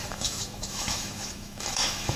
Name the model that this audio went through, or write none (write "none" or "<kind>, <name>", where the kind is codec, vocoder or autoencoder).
autoencoder, DAC-VAE